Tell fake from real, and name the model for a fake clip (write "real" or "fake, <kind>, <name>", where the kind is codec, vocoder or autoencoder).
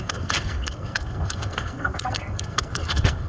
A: fake, codec, SNAC